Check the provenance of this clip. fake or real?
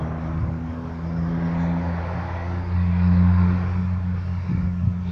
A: fake